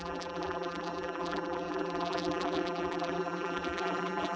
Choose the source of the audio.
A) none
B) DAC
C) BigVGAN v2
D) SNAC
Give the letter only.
C